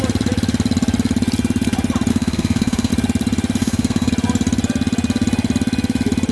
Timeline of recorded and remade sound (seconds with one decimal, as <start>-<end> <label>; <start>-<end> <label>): 0.0-2.1 recorded; 2.1-2.9 remade; 2.9-3.6 recorded; 3.6-4.1 remade; 4.1-6.3 recorded